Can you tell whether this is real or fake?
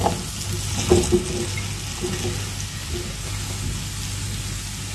real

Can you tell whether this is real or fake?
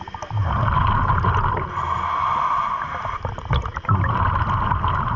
real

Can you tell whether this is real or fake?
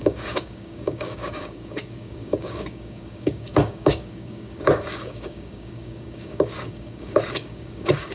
fake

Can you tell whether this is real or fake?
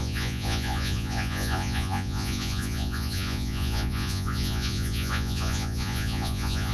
fake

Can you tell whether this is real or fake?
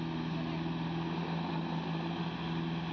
real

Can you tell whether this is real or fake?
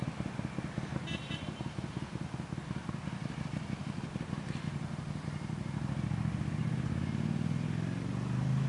real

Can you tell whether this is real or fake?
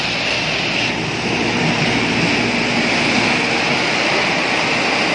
real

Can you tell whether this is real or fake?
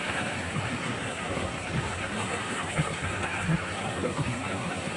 fake